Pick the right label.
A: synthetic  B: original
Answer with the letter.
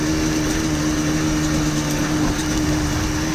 B